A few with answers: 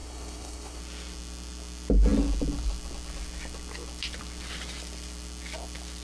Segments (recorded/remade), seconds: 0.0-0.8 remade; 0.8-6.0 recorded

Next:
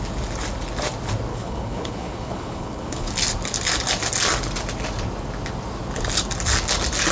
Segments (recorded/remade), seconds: 0.0-1.3 recorded; 1.3-3.1 remade; 3.1-7.1 recorded

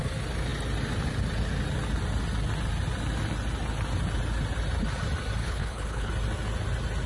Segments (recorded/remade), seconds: 0.0-5.4 recorded; 5.4-6.1 remade; 6.1-7.1 recorded

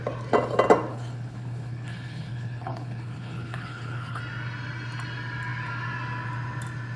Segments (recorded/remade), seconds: 0.0-0.9 recorded; 0.9-4.2 remade; 4.2-7.0 recorded

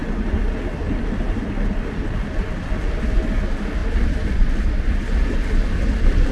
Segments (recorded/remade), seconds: 0.0-6.3 recorded

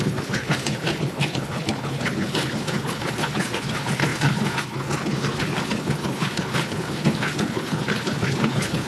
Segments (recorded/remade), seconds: 0.0-8.9 remade

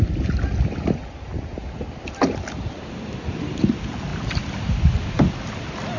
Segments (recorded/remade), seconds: 0.0-6.0 recorded

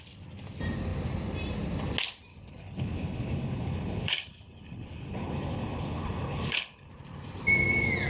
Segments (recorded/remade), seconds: 0.0-2.3 recorded; 2.3-6.9 remade; 6.9-8.1 recorded